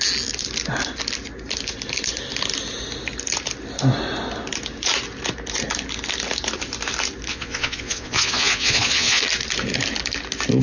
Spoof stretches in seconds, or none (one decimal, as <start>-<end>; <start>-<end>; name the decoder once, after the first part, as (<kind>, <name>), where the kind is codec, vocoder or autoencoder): 7.3-9.2 (vocoder, Vocos)